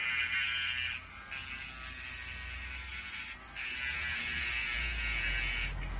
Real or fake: real